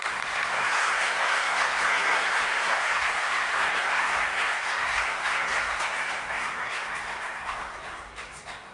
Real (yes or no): no